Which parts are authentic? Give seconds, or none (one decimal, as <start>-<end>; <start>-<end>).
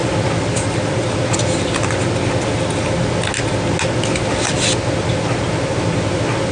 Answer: 0.0-6.5